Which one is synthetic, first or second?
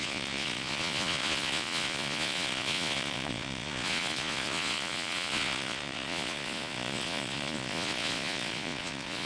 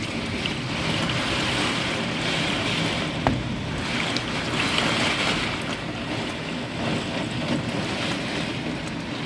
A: first